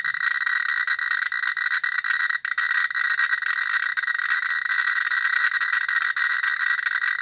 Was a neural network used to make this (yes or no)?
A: no